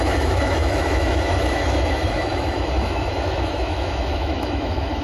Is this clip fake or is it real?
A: fake